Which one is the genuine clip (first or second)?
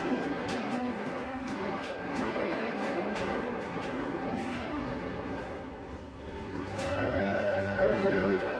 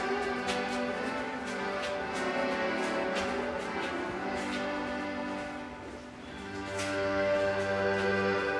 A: second